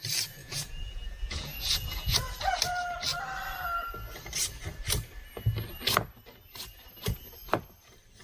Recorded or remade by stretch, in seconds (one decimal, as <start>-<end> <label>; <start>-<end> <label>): 0.0-0.4 recorded; 0.4-2.3 remade; 2.3-8.2 recorded